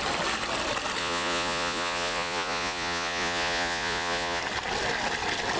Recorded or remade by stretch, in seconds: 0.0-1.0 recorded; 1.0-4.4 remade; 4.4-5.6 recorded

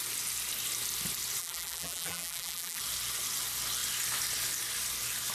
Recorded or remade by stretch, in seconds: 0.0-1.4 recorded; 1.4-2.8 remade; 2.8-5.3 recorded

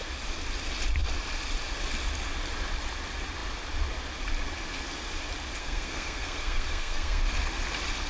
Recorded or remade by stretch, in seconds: 0.0-5.6 recorded; 5.6-7.2 remade; 7.2-8.1 recorded

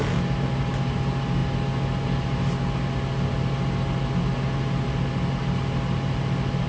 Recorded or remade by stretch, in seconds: 0.0-6.7 recorded

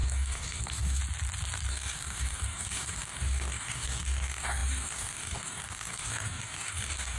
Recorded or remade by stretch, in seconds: 0.0-1.0 remade; 1.0-1.7 recorded; 1.7-7.2 remade